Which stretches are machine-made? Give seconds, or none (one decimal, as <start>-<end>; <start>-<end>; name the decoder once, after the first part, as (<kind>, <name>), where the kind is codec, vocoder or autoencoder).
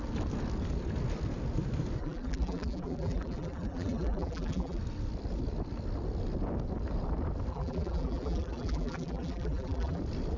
2.0-4.8 (vocoder, BigVGAN v2); 7.5-10.0